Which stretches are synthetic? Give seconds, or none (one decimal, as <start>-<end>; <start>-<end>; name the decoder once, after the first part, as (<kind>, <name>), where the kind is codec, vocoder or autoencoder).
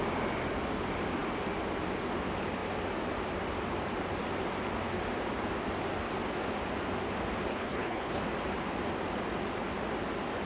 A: 7.5-8.2 (codec, HILCodec)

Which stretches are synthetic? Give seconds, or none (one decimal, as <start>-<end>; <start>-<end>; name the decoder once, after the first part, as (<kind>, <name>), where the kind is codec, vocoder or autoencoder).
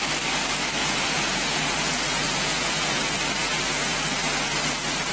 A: 0.8-3.0 (vocoder, Vocos); 3.4-4.0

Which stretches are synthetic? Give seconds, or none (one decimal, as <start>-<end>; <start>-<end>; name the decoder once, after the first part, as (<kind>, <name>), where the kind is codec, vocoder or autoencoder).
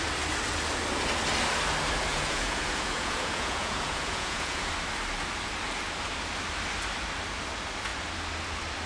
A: 2.1-4.7 (vocoder, Vocos)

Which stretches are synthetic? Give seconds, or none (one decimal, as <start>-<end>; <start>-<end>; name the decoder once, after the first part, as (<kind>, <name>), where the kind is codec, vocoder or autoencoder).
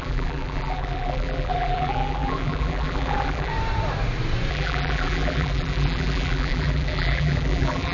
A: 0.0-3.5 (vocoder, BigVGAN v2); 4.5-7.9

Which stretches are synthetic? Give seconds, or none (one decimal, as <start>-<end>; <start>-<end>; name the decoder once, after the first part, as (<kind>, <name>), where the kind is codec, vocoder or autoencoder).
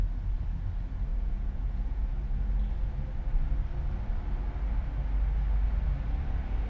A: 1.1-2.4 (vocoder, Vocos)